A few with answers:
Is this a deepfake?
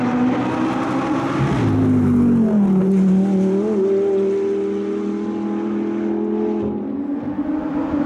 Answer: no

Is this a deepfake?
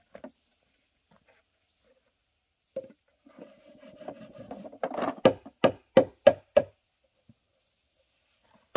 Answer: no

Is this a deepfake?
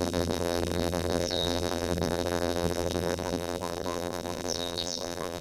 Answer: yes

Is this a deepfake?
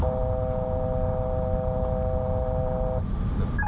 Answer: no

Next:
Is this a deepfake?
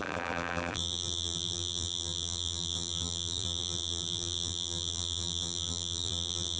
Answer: yes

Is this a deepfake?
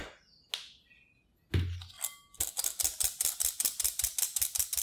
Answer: no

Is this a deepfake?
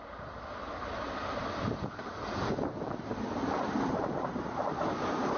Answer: yes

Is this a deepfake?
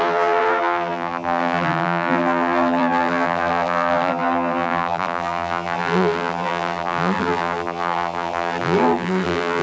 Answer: yes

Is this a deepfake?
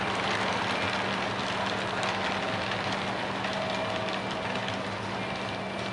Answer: no